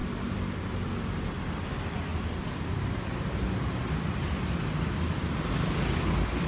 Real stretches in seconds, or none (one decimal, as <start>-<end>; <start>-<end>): 0.0-6.5